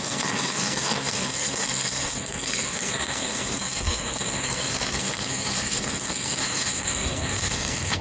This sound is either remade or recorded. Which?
remade